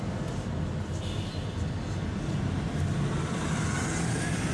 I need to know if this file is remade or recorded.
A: recorded